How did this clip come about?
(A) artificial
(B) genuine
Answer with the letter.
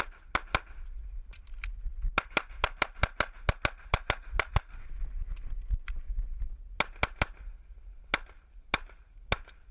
B